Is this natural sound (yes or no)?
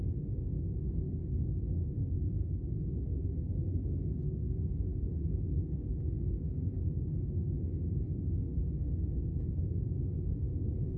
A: no